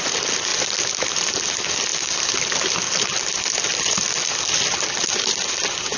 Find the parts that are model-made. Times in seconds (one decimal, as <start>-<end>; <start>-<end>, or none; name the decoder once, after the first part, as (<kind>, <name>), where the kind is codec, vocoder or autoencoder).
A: none

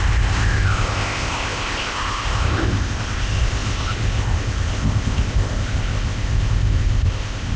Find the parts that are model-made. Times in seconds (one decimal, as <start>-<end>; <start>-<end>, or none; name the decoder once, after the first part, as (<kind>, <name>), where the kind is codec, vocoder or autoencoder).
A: 0.0-7.6 (codec, ZipCodec)

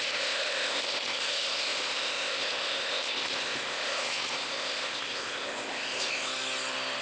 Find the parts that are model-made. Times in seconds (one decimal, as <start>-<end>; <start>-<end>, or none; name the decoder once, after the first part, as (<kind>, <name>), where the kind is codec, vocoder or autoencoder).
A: 0.0-6.3 (codec, ZipCodec)

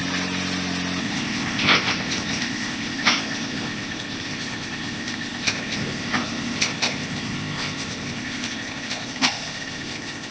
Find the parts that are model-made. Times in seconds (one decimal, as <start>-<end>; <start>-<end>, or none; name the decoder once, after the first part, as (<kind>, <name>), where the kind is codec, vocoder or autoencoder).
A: 1.0-10.3 (codec, ZipCodec)

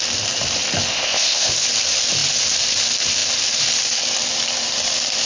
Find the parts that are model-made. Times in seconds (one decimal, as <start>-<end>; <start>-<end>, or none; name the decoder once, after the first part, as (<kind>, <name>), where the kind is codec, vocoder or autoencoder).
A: 0.9-1.5 (codec, ZipCodec)

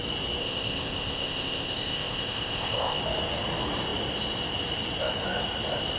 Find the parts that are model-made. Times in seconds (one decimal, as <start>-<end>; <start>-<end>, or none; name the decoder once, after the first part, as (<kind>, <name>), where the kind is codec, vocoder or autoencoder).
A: 0.4-3.0 (codec, ZipCodec)